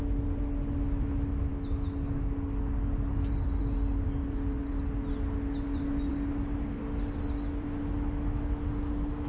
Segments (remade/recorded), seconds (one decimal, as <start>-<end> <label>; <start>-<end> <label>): 0.0-9.3 recorded

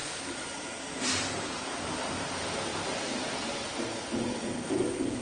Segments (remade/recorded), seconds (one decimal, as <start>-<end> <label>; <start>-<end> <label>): 0.0-5.2 recorded

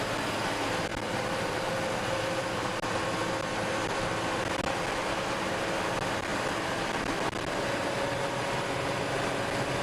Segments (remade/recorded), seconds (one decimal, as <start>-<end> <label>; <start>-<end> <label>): 0.0-9.8 recorded

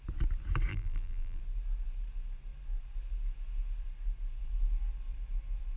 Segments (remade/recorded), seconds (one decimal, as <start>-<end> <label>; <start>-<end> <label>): 0.0-0.7 recorded; 0.7-1.4 remade; 1.4-5.8 recorded